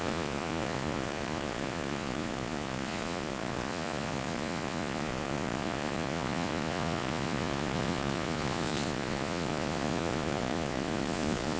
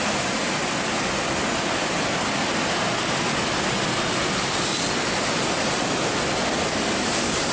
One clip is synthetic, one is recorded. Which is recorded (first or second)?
second